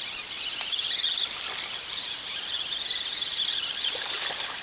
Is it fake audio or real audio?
real